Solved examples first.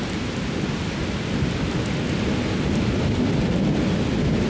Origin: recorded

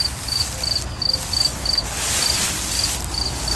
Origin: recorded